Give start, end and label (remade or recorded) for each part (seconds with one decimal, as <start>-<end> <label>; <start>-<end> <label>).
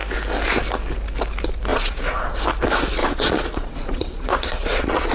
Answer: 0.0-1.7 recorded; 1.7-2.4 remade; 2.4-3.0 recorded; 3.0-5.1 remade